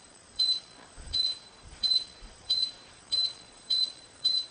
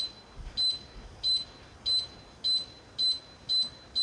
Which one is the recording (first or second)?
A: second